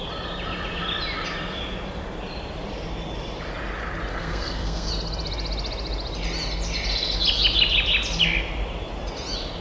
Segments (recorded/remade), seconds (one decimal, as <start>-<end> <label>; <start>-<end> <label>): 0.0-4.1 recorded; 4.1-4.9 remade; 4.9-9.6 recorded